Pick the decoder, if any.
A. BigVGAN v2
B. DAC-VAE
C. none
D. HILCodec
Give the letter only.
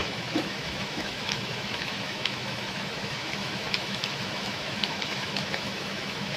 B